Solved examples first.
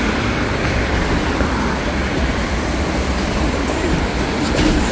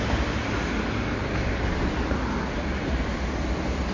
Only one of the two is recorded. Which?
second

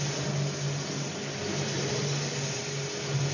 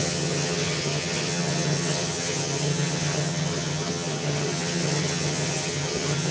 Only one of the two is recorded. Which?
first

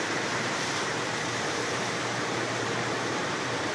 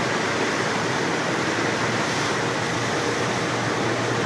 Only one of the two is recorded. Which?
second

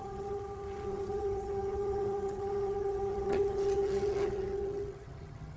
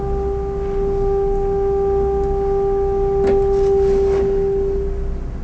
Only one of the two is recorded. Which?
second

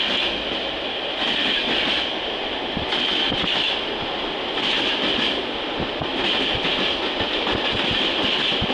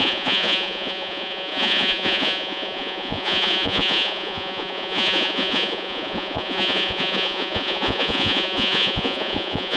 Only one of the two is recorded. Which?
first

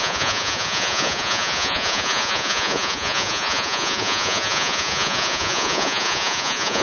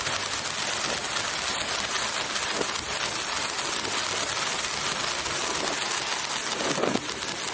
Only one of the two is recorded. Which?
second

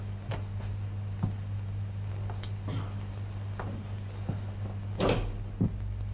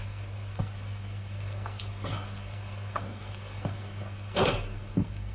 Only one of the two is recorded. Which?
first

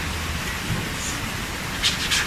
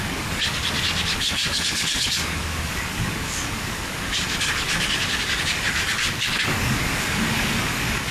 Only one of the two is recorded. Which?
first